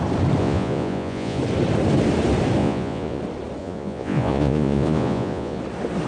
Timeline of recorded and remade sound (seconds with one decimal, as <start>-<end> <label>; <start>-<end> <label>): 0.0-0.4 recorded; 0.4-1.4 remade; 1.4-2.6 recorded; 2.6-3.2 remade; 3.2-3.6 recorded; 3.6-5.6 remade; 5.6-6.1 recorded